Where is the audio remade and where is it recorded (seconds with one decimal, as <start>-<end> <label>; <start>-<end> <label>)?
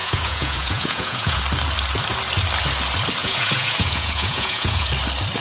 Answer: 0.0-1.4 remade; 1.4-3.2 recorded; 3.2-4.9 remade; 4.9-5.4 recorded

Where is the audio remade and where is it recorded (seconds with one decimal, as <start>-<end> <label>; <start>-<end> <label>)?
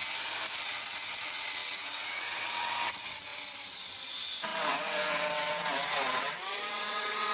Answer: 0.0-0.6 recorded; 0.6-7.3 remade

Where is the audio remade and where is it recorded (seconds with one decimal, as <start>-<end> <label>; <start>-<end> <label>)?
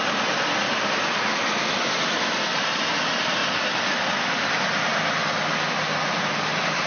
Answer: 0.0-6.9 recorded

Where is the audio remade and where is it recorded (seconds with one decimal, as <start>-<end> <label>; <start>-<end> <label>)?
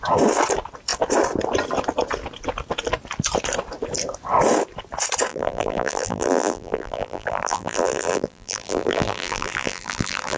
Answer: 0.0-5.3 recorded; 5.3-10.4 remade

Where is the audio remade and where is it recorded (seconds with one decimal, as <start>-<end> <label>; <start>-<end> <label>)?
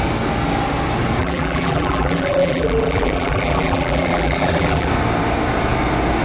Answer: 0.0-1.2 recorded; 1.2-4.9 remade; 4.9-6.2 recorded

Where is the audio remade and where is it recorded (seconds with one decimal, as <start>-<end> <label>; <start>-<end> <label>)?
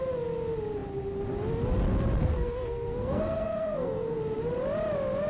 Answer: 0.0-2.2 recorded; 2.2-4.2 remade; 4.2-5.3 recorded